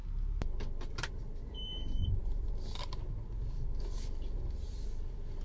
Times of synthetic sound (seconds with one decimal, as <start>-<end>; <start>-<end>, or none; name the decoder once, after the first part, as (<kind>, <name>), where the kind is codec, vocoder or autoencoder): 0.9-5.4 (vocoder, BigVGAN v2)